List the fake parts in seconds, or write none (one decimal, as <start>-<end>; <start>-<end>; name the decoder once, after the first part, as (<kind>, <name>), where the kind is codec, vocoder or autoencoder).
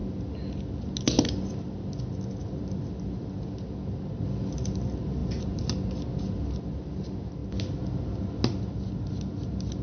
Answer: none